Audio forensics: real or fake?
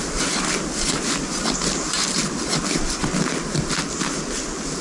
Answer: real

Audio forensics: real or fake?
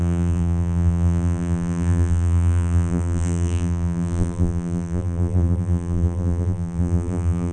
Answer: fake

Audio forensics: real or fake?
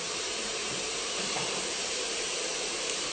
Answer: fake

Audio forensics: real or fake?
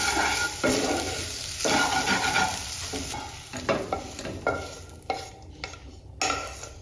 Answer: real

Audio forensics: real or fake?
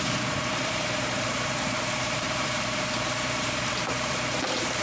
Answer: fake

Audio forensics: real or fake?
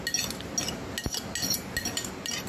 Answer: real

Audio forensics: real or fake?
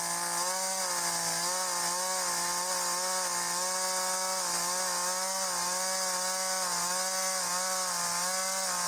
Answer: real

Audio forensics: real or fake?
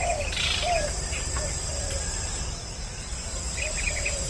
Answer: fake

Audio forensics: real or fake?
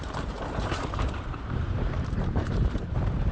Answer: fake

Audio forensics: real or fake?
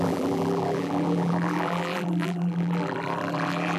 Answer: fake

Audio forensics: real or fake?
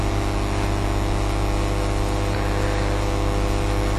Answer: real